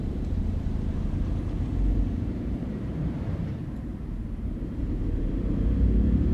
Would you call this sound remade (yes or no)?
yes